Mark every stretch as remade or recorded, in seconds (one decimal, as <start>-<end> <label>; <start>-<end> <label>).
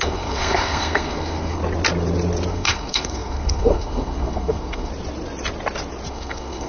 0.0-1.6 remade; 1.6-2.5 recorded; 2.5-4.9 remade; 4.9-6.1 recorded; 6.1-6.7 remade